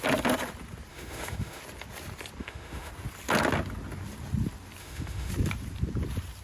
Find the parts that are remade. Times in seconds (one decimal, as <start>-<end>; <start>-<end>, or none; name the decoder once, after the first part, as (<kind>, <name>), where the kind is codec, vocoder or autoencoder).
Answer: 0.9-1.6 (autoencoder, DAC-VAE); 2.4-2.9; 4.8-5.3